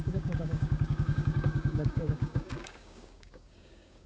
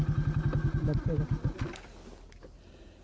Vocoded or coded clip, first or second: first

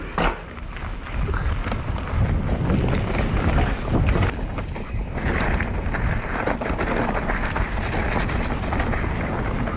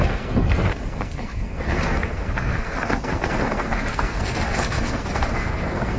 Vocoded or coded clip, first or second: second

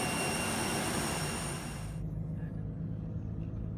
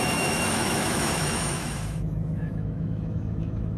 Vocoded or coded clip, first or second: second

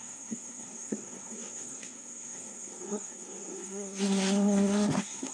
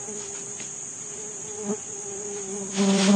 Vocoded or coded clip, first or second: first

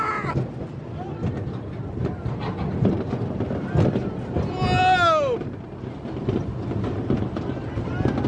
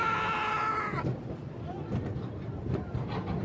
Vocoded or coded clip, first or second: second